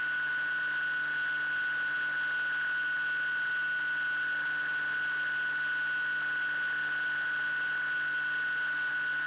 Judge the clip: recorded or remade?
recorded